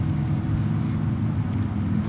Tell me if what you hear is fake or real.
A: real